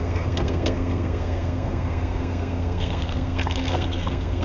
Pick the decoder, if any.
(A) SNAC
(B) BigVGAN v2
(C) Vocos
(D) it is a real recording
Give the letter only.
A